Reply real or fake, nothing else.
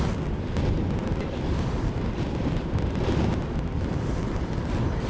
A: real